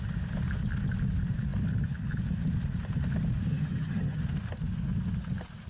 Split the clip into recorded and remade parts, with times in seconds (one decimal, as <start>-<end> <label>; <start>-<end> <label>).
0.0-3.5 recorded; 3.5-4.2 remade; 4.2-5.7 recorded